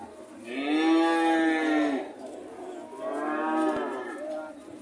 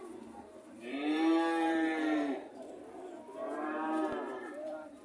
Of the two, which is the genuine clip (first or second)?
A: first